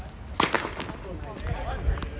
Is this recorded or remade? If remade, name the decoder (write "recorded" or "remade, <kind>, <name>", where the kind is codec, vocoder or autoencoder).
recorded